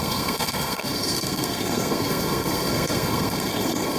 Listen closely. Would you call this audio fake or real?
fake